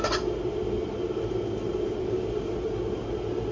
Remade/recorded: recorded